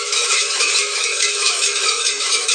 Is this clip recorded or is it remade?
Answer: remade